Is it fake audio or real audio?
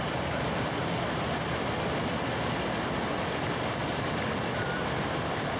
real